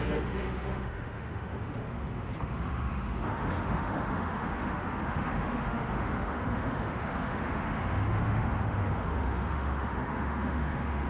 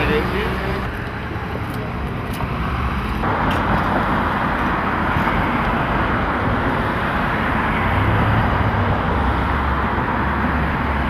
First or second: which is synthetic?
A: first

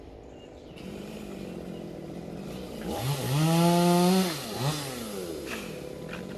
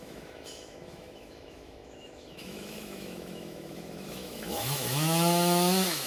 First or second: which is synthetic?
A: second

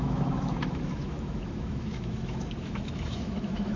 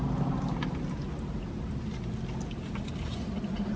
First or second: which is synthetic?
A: first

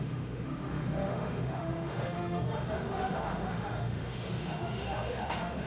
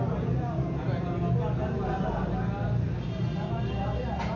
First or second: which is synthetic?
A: first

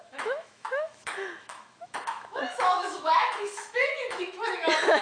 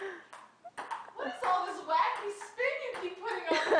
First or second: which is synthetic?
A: first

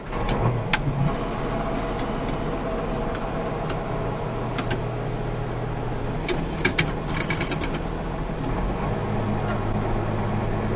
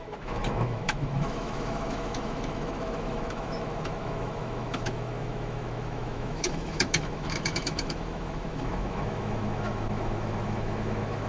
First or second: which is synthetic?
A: second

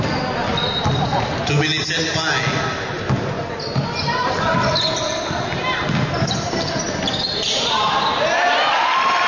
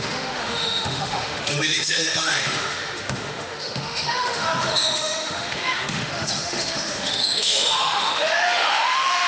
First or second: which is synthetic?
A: second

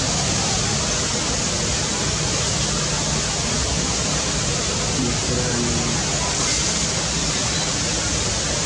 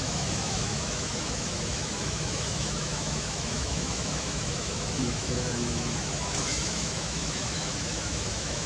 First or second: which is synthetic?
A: second